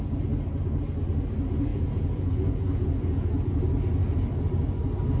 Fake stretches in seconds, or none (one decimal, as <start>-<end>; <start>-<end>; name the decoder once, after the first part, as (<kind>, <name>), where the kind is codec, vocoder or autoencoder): 1.7-3.6 (vocoder, Vocos)